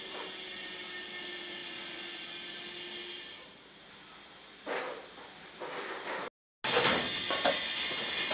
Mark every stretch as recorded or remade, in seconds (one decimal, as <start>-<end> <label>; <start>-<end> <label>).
0.0-8.3 recorded